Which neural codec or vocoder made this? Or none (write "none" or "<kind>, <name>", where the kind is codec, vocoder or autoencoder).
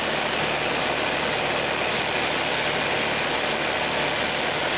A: none